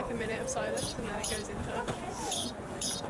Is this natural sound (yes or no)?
no